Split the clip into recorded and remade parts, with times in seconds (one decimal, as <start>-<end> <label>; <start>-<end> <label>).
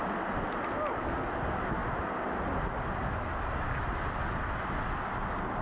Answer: 0.0-5.6 recorded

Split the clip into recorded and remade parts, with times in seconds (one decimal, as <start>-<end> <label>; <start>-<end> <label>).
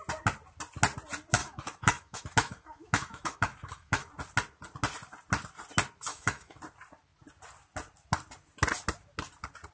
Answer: 0.0-1.4 recorded; 1.4-4.1 remade; 4.1-6.1 recorded; 6.1-6.6 remade; 6.6-9.7 recorded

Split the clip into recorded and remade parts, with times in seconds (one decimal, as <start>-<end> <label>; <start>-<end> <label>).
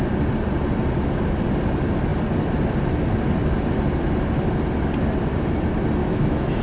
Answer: 0.0-6.0 recorded; 6.0-6.6 remade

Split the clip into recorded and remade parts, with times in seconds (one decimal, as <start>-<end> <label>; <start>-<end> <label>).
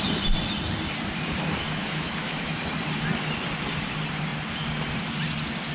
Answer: 0.0-1.8 recorded; 1.8-2.6 remade; 2.6-5.7 recorded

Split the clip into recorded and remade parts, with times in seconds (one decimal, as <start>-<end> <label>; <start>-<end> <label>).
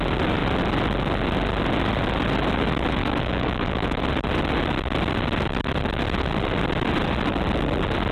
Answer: 0.0-3.0 recorded; 3.0-4.0 remade; 4.0-8.1 recorded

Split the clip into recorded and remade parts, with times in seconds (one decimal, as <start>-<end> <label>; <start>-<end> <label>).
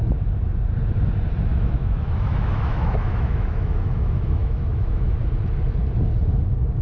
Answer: 0.0-1.5 recorded; 1.5-5.2 remade; 5.2-6.8 recorded